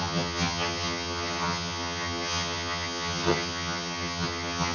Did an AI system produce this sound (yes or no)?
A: yes